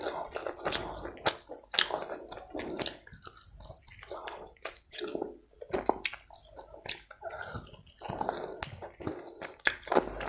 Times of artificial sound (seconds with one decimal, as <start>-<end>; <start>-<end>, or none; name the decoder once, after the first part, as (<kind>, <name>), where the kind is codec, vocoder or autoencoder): 4.3-5.0 (vocoder, WaveNeXt)